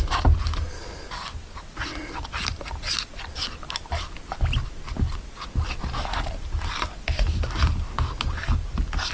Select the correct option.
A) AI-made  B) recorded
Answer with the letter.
B